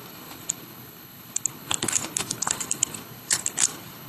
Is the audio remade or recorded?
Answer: remade